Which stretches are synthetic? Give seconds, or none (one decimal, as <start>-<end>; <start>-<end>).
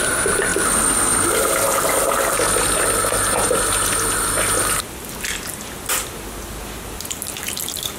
none